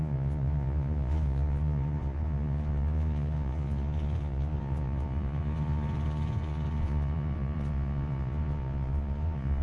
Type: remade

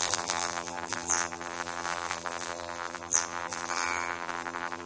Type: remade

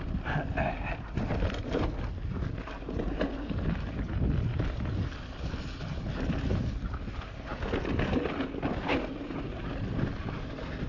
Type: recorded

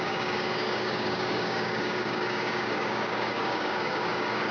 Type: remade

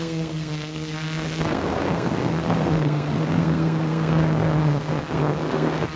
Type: remade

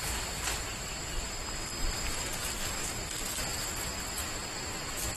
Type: recorded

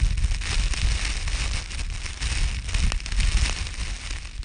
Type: recorded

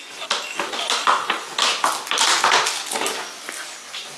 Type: recorded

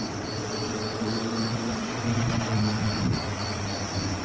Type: remade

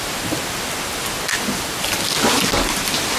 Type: recorded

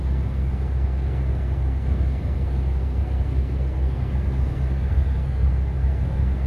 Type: remade